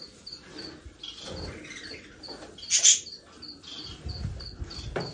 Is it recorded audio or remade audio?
recorded